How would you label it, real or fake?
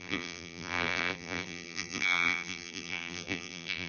fake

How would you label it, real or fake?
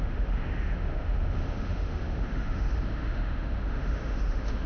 fake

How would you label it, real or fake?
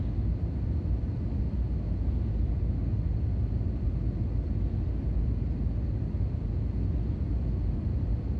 real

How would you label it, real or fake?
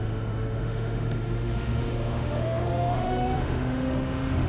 fake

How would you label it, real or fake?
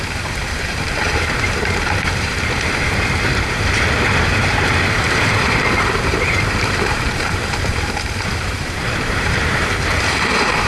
fake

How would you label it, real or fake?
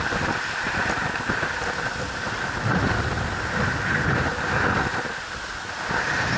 real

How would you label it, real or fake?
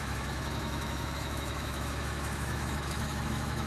fake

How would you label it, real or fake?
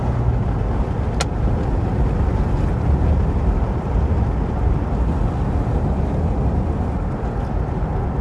real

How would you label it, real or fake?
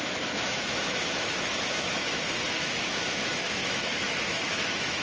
fake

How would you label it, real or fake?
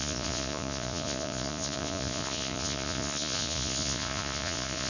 fake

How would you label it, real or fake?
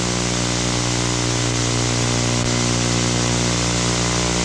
real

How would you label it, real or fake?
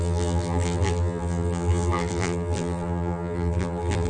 fake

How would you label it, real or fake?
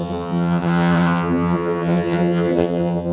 fake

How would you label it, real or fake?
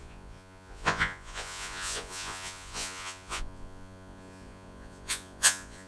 fake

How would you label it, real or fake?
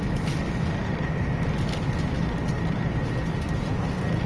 real